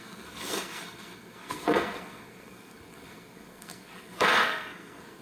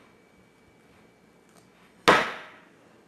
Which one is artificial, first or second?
first